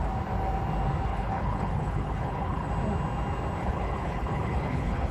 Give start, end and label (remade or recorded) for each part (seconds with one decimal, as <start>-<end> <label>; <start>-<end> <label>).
0.0-1.1 recorded; 1.1-2.7 remade; 2.7-3.6 recorded; 3.6-5.1 remade